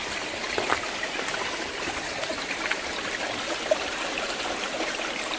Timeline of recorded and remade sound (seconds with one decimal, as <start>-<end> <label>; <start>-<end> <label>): 0.0-5.4 recorded